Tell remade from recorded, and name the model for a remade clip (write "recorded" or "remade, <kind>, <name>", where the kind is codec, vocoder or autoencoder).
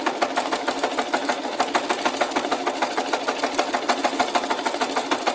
recorded